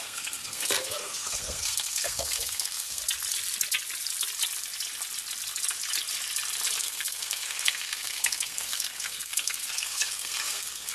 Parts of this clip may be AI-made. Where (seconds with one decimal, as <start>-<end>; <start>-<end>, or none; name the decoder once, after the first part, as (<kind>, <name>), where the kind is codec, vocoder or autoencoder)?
0.0-3.0 (codec, SNAC); 6.8-10.9